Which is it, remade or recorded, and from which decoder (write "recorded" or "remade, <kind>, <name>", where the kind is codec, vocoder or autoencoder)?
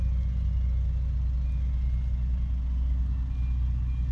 recorded